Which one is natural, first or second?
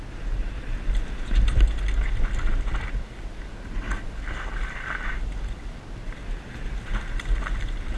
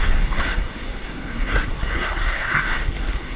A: first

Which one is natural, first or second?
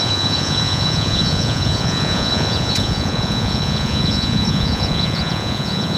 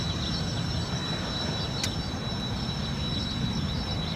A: second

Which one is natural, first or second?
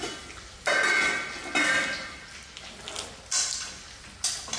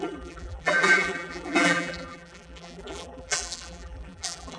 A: first